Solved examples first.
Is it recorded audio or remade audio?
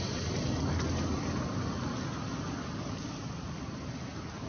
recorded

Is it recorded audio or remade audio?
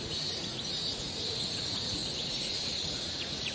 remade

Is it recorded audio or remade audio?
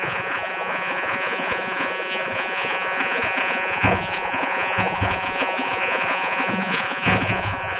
remade